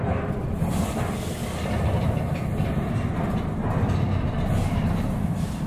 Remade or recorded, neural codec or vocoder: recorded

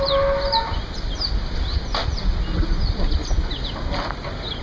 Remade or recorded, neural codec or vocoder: recorded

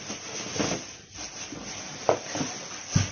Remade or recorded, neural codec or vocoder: recorded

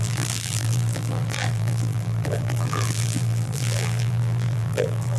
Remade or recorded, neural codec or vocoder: remade, vocoder, BigVGAN v2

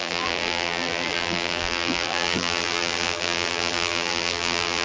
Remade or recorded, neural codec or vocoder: remade, vocoder, BigVGAN v2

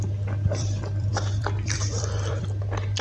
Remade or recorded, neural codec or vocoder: remade, vocoder, BigVGAN v2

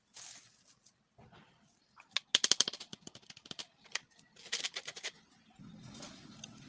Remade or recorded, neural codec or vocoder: recorded